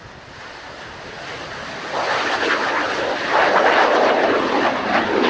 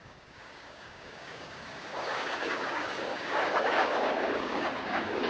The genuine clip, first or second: first